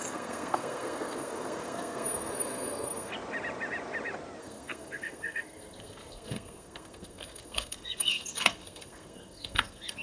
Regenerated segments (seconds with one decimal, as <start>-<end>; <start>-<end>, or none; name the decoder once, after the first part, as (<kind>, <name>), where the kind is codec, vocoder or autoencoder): 0.0-3.1 (codec, SNAC); 4.4-10.0